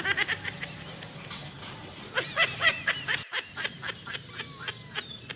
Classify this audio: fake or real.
fake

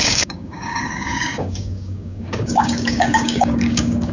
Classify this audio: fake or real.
fake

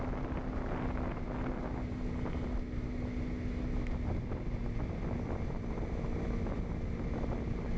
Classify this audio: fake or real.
real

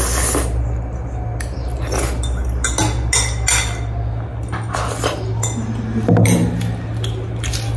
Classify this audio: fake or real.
real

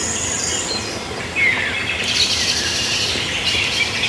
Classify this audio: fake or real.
real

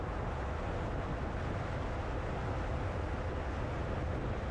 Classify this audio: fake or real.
real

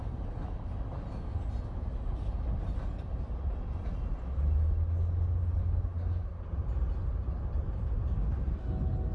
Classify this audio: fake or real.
real